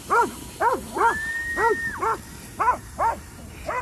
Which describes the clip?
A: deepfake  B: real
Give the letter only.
B